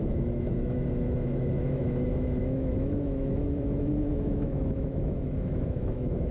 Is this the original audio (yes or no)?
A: no